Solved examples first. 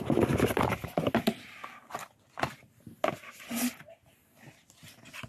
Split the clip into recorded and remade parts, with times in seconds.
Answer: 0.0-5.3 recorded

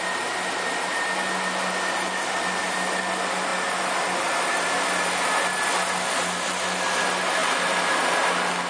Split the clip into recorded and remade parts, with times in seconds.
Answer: 0.0-8.7 recorded

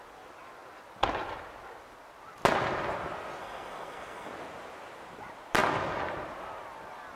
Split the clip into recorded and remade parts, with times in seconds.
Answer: 0.0-3.4 recorded; 3.4-4.3 remade; 4.3-7.2 recorded

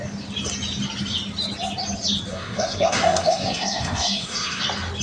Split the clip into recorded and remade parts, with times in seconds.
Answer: 0.0-2.3 recorded; 2.3-4.6 remade; 4.6-5.0 recorded

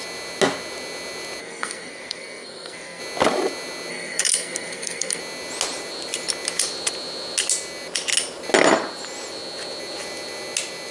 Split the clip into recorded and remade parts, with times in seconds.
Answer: 0.0-1.4 recorded; 1.4-3.0 remade; 3.0-3.9 recorded; 3.9-5.2 remade; 5.2-10.9 recorded

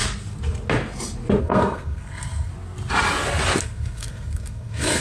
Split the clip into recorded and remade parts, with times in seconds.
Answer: 0.0-1.4 recorded; 1.4-2.5 remade; 2.5-3.6 recorded; 3.6-5.0 remade

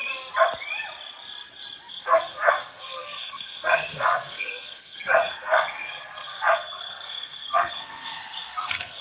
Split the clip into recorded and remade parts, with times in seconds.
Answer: 0.0-1.9 recorded; 1.9-9.0 remade

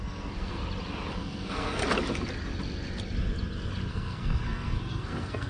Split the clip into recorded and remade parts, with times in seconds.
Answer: 0.0-0.6 remade; 0.6-1.1 recorded; 1.1-1.8 remade; 1.8-3.9 recorded; 3.9-5.5 remade